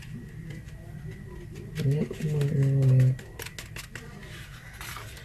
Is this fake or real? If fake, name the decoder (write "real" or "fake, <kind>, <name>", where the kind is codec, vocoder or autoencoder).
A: real